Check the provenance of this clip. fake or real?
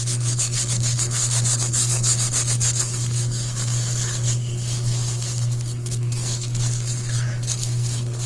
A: fake